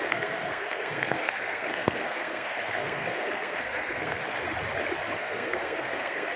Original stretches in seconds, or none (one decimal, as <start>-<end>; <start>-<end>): 4.4-5.2